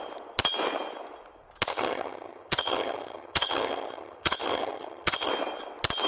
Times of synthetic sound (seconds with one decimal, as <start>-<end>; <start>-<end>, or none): 1.7-5.3